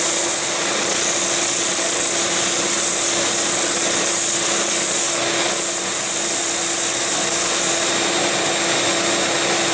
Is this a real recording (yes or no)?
yes